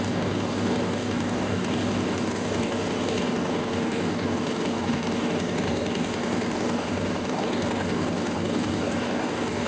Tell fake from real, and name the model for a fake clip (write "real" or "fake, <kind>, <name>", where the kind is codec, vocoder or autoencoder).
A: fake, codec, DAC